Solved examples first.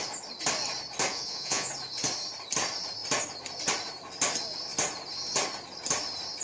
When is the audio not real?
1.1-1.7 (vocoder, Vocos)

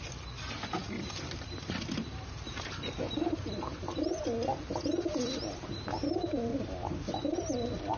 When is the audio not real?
0.8-4.2 (vocoder, BigVGAN v2); 6.5-7.5

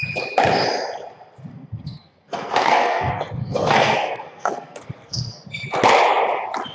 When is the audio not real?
1.5-5.4 (codec, SNAC)

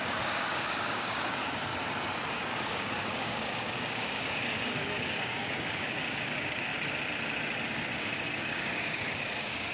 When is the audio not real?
0.0-1.7 (codec, DAC); 2.3-6.7; 8.4-9.7

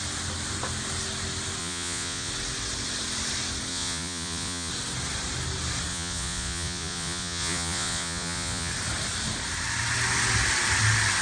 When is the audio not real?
1.6-2.3 (vocoder, Vocos); 3.7-4.7; 5.9-8.7

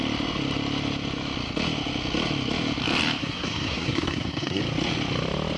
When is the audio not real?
3.2-4.6 (codec, SNAC)

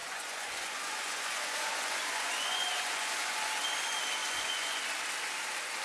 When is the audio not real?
0.0-3.5 (vocoder, Vocos); 4.2-4.8

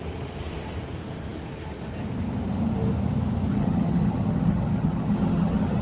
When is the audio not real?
3.5-5.8 (vocoder, HiFi-GAN)